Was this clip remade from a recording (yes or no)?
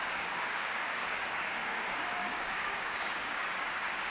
yes